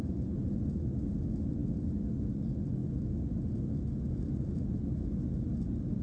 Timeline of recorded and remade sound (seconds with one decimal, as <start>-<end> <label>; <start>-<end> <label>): 0.0-6.0 recorded